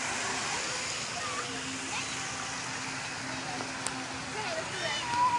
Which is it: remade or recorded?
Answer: recorded